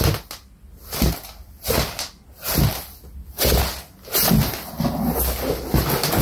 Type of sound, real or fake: real